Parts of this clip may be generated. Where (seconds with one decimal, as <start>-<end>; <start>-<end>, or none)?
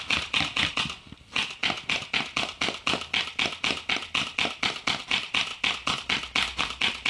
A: 0.0-1.6; 5.0-5.5; 6.6-7.1